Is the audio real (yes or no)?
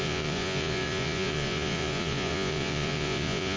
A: no